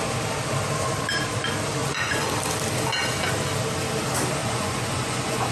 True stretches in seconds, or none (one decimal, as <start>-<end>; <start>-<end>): 0.0-1.8; 2.3-4.4